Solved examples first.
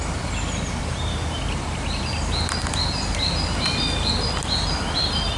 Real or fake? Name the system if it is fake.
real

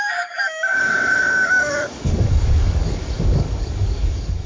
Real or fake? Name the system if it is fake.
fake, codec, DAC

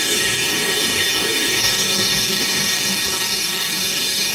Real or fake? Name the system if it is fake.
fake, codec, DAC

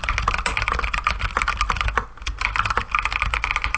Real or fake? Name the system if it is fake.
real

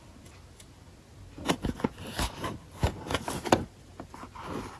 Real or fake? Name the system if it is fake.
real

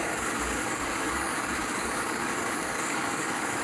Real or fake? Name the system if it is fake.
fake, codec, DAC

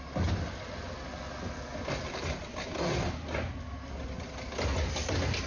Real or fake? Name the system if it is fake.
real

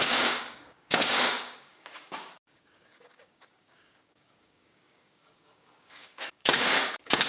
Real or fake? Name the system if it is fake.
fake, codec, DAC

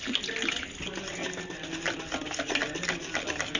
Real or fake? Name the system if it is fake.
real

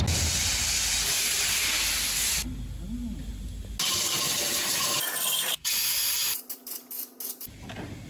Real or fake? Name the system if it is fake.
real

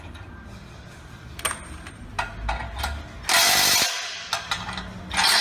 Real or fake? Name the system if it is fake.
real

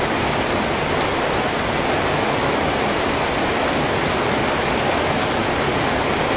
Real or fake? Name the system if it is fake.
real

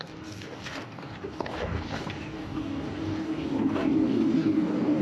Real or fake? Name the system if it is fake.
fake, codec, DAC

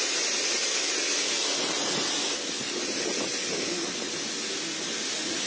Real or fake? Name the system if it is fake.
real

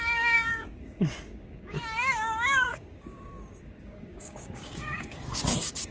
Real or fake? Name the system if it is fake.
fake, codec, DAC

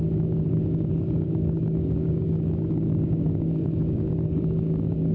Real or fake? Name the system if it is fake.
fake, codec, DAC